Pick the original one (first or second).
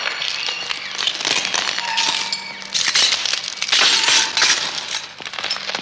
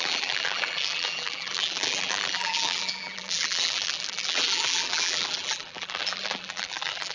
first